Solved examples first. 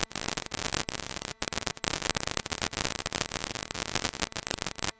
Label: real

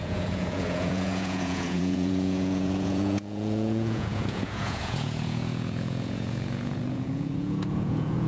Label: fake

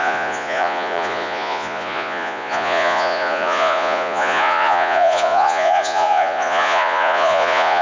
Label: fake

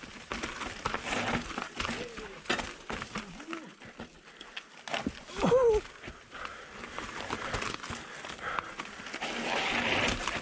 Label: real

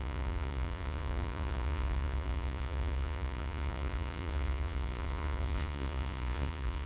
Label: fake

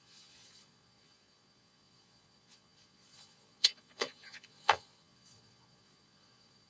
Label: fake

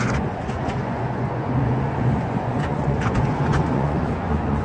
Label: fake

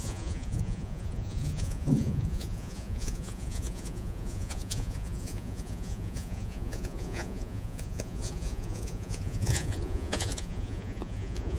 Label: fake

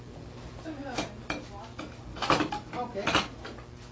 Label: real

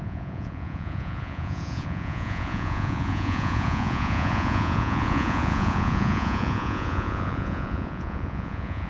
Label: fake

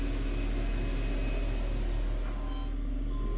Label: real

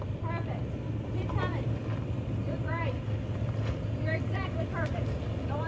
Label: real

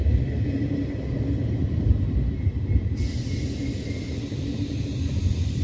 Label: real